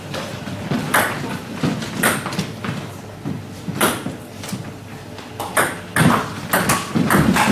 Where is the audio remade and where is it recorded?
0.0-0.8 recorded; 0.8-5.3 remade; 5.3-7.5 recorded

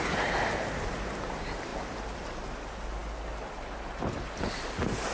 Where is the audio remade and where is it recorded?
0.0-5.1 recorded

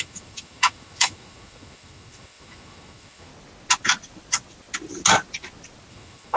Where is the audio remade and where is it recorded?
0.0-3.3 remade; 3.3-5.9 recorded; 5.9-6.4 remade

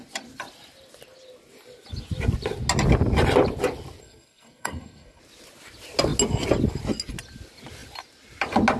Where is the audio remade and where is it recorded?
0.0-4.0 recorded; 4.0-5.2 remade; 5.2-8.8 recorded